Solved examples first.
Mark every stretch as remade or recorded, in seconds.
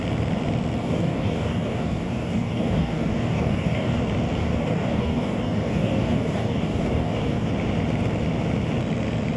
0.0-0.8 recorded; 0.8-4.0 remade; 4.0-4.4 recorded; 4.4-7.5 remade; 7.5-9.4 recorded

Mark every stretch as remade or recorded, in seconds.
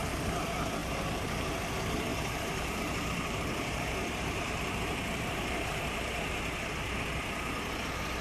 0.0-2.1 recorded; 2.1-6.4 remade; 6.4-8.2 recorded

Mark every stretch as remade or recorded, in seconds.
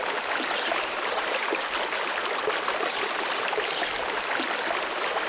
0.0-5.3 recorded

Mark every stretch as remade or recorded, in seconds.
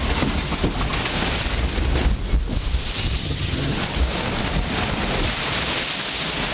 0.0-3.2 recorded; 3.2-3.8 remade; 3.8-6.5 recorded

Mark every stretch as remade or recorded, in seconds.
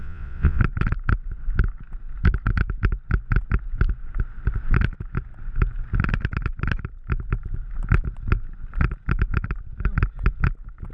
0.0-0.6 remade; 0.6-10.9 recorded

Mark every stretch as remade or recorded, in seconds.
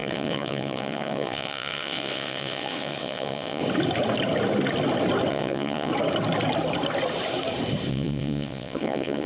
0.0-3.6 remade; 3.6-5.3 recorded; 5.3-5.9 remade; 5.9-7.9 recorded; 7.9-9.3 remade